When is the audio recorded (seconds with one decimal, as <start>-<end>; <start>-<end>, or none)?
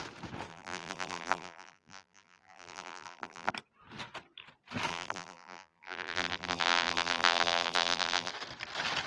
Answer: 0.0-0.5; 3.5-4.9; 8.3-9.1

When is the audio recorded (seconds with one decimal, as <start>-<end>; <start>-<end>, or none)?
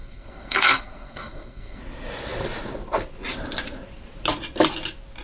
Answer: 1.8-5.2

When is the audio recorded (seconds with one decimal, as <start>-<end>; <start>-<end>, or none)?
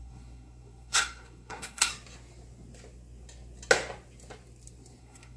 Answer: 1.9-5.0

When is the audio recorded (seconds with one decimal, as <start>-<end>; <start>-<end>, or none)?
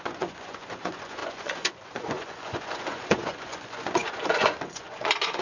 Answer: none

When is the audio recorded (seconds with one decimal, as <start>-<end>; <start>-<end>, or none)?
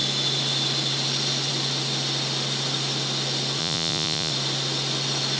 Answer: 0.0-3.6; 4.3-5.4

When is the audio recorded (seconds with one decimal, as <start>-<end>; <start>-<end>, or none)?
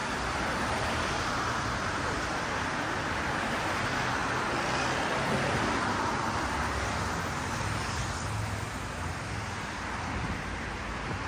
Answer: 2.0-4.2; 6.5-11.3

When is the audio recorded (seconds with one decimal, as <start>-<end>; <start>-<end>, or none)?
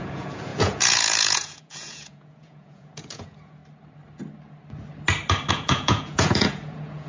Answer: 3.6-5.5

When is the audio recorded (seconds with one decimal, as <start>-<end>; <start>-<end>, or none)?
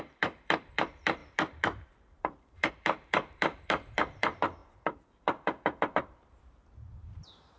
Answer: none